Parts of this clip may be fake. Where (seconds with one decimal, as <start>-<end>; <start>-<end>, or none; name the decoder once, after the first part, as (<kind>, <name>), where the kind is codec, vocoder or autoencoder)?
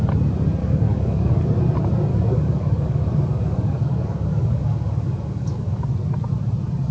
0.6-1.4 (codec, DAC); 2.1-5.8